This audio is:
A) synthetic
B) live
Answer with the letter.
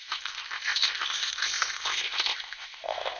A